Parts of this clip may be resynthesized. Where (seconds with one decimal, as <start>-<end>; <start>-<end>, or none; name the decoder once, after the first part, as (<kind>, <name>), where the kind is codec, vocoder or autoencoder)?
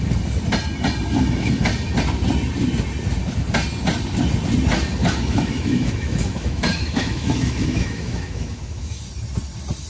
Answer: 5.0-9.0 (autoencoder, DAC-VAE)